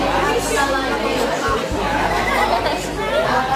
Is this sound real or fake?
real